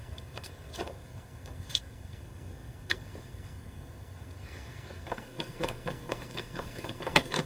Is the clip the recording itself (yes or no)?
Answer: no